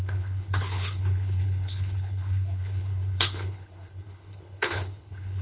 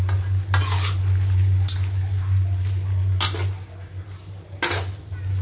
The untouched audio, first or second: second